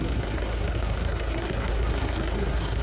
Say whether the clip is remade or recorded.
remade